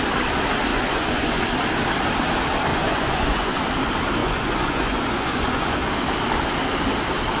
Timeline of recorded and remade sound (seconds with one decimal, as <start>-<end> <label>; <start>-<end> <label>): 0.0-0.7 recorded; 0.7-1.4 remade; 1.4-2.7 recorded; 2.7-3.6 remade; 3.6-4.2 recorded; 4.2-5.8 remade; 5.8-7.4 recorded